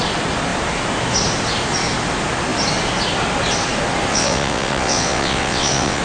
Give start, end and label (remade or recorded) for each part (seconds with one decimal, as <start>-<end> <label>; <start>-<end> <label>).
0.0-4.1 recorded; 4.1-6.0 remade

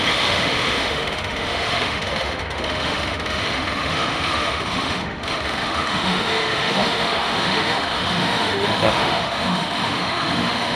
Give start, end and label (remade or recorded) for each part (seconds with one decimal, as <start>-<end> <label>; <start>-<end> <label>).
0.0-10.8 remade

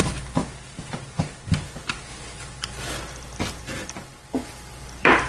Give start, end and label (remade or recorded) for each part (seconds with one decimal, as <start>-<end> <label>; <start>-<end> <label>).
0.0-0.4 remade; 0.4-2.4 recorded; 2.4-5.3 remade